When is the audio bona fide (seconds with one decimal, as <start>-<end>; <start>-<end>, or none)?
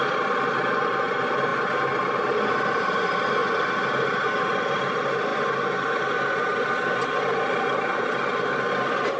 1.5-2.5; 3.4-4.4; 5.3-6.1